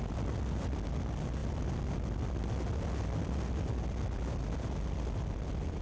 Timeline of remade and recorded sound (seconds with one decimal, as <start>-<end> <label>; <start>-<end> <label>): 0.0-5.8 recorded